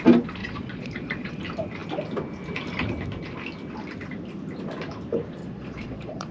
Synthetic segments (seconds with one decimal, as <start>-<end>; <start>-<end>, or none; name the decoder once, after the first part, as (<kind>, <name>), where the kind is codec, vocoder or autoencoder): 0.4-1.4 (vocoder, Vocos); 5.4-6.3